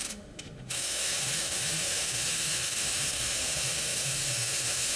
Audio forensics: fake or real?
fake